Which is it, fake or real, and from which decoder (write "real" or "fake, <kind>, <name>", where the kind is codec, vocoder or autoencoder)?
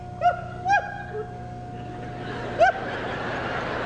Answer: real